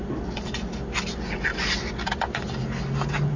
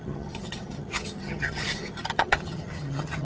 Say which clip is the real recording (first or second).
first